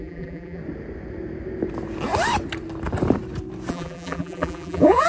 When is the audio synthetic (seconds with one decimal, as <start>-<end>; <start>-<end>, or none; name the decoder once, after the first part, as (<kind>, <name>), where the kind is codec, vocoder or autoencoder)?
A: 0.0-0.6 (vocoder, BigVGAN v2); 3.7-5.1